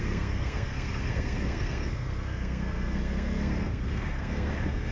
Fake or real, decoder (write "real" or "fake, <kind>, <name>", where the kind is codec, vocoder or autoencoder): fake, codec, SNAC